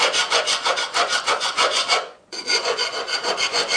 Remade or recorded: remade